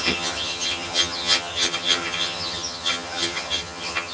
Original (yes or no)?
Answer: no